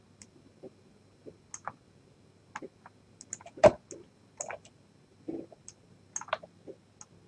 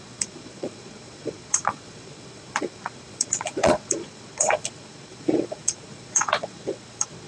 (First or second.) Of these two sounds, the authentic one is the first